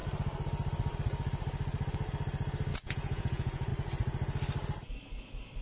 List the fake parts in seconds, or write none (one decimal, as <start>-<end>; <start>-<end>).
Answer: 2.7-3.7